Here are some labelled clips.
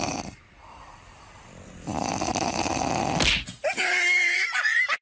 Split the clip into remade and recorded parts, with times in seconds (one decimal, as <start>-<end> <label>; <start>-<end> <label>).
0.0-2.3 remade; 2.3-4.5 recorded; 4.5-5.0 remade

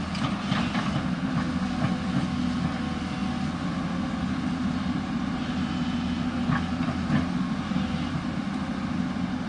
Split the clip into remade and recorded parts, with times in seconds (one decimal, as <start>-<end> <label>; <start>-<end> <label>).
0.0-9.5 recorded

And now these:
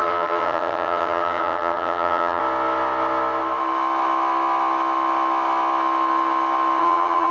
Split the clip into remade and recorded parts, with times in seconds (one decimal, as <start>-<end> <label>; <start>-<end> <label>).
0.0-2.4 remade; 2.4-6.8 recorded; 6.8-7.3 remade

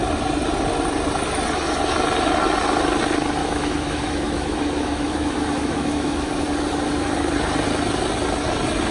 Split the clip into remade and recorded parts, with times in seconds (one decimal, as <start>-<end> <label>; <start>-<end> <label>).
0.0-3.4 recorded; 3.4-6.4 remade; 6.4-8.9 recorded

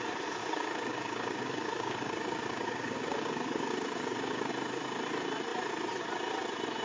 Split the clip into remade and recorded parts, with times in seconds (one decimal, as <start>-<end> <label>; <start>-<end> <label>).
0.0-0.4 recorded; 0.4-4.5 remade; 4.5-6.8 recorded